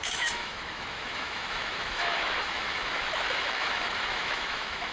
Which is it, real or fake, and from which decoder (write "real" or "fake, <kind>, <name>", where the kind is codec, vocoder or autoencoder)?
fake, autoencoder, DAC-VAE